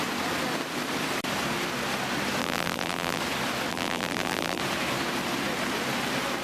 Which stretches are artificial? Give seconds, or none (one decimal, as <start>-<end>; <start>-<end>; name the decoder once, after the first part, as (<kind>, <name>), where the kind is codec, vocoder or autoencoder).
2.4-3.2 (vocoder, BigVGAN v2); 3.7-4.6